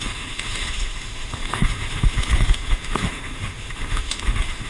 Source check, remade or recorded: remade